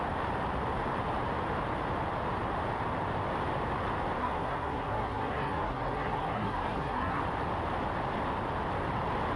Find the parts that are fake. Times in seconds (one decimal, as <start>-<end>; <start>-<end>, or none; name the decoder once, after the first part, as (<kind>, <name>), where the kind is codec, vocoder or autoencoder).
4.2-7.2 (codec, SNAC)